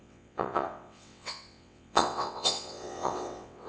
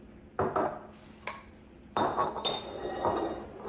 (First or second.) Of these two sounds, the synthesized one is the first